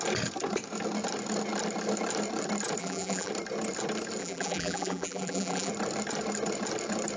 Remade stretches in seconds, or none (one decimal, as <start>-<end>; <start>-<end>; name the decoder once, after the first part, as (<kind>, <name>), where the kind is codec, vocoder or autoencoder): 2.8-3.3 (vocoder, BigVGAN v2); 4.2-5.7